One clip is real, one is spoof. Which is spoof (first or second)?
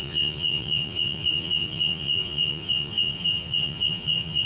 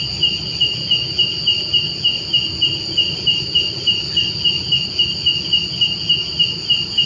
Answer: first